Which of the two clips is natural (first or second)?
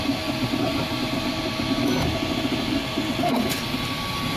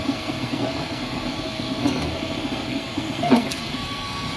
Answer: first